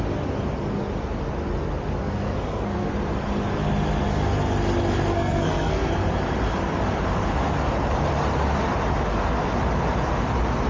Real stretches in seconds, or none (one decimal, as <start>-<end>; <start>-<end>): 0.0-2.0; 2.9-5.1; 5.9-10.7